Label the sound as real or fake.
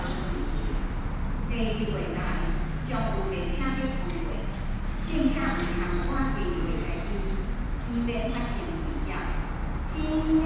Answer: real